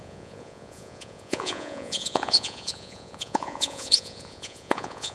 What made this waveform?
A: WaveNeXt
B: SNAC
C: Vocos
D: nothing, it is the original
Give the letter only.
C